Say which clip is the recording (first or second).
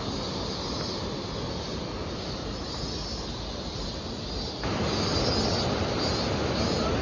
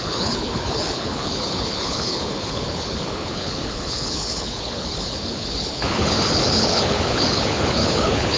first